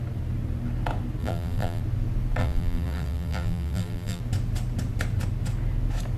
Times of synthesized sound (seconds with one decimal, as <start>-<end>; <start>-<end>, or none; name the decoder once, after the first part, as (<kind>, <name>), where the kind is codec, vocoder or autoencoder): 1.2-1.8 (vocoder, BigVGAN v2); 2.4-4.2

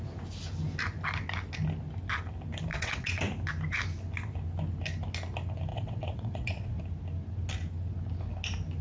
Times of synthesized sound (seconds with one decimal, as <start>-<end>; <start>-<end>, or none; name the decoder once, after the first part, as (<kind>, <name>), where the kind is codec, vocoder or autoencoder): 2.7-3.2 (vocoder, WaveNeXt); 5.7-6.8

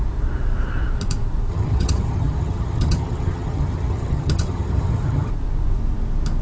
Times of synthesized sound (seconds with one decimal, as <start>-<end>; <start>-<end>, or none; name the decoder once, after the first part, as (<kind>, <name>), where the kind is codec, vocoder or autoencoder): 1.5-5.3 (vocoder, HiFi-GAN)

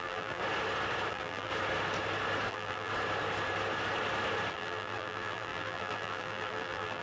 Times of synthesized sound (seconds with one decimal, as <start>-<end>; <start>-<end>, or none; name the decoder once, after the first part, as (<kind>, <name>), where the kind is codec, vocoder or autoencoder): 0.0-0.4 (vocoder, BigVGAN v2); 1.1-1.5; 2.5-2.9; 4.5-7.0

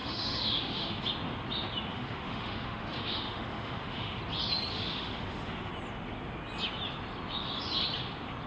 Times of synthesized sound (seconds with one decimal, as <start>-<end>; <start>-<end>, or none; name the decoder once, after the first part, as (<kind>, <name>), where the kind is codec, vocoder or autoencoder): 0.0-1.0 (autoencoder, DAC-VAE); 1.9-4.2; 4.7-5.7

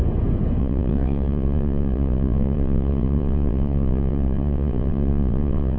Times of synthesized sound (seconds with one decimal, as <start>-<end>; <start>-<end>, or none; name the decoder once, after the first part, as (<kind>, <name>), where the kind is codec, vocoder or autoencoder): 0.6-5.8 (vocoder, WaveNeXt)

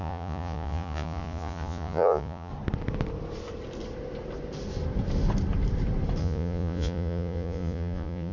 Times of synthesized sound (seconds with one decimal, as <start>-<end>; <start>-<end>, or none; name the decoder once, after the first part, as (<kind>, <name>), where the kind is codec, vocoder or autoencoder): 0.0-2.5 (vocoder, Vocos); 6.2-8.3